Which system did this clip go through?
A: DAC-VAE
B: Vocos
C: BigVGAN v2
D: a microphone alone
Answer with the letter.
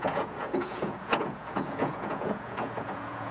B